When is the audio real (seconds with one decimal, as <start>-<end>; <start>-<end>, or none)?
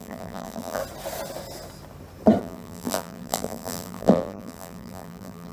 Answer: 0.8-2.4